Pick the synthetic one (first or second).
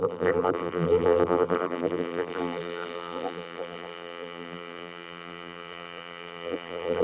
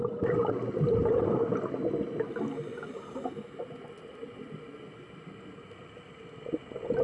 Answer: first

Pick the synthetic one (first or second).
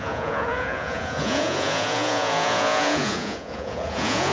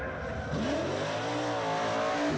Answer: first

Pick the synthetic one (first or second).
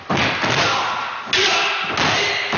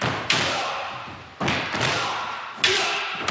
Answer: second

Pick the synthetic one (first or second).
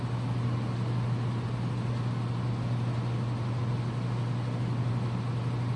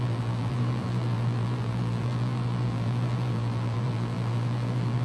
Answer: second